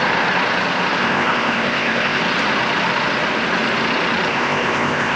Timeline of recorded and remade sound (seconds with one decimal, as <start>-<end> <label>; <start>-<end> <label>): 0.0-1.0 recorded; 1.0-2.2 remade; 2.2-4.3 recorded; 4.3-5.2 remade